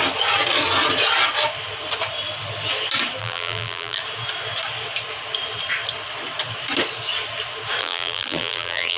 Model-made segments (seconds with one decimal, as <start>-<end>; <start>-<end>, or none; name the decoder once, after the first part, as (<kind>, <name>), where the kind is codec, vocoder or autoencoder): 3.2-4.0 (vocoder, BigVGAN v2); 7.8-9.0